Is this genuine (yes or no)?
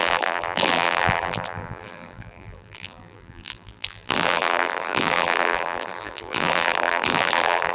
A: no